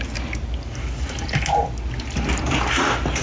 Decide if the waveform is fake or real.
real